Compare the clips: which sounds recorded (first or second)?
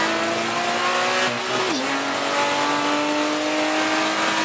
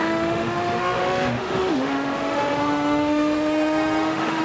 first